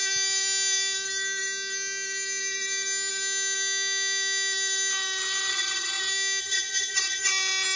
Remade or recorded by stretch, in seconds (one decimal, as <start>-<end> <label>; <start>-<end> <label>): 0.0-5.5 recorded; 5.5-6.0 remade; 6.0-6.4 recorded; 6.4-7.3 remade; 7.3-7.8 recorded